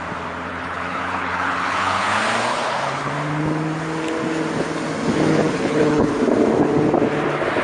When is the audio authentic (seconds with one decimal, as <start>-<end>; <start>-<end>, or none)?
0.0-0.5; 2.1-2.5; 3.1-5.3; 6.1-7.6